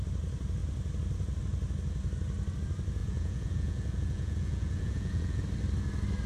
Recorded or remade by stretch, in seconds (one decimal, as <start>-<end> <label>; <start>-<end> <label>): 0.0-3.0 recorded; 3.0-5.4 remade; 5.4-6.3 recorded